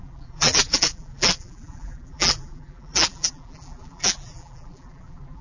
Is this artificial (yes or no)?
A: yes